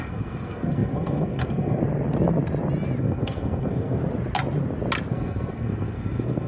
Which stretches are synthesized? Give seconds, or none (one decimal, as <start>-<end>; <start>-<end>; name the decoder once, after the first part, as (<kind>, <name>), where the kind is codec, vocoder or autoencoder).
0.0-1.8 (codec, SNAC); 3.0-4.0; 5.1-6.5